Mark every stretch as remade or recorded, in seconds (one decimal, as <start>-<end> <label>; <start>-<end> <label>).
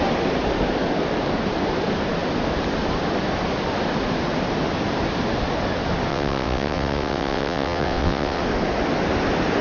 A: 0.0-6.1 recorded; 6.1-8.4 remade; 8.4-9.6 recorded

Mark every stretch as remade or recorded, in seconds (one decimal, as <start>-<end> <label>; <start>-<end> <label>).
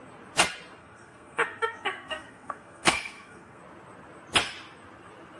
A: 0.0-0.8 recorded; 0.8-3.6 remade; 3.6-5.4 recorded